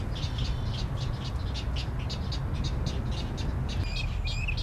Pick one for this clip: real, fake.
real